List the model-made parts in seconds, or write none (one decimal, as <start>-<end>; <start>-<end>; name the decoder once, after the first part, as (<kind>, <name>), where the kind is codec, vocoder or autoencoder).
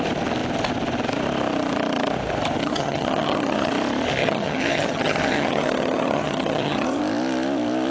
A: 2.6-3.7 (vocoder, HiFi-GAN); 4.2-7.0